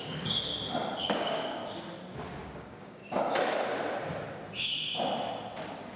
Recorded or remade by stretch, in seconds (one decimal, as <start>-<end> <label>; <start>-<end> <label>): 0.0-0.5 remade; 0.5-1.0 recorded; 1.0-1.6 remade; 1.6-2.6 recorded; 2.6-3.0 remade; 3.0-6.0 recorded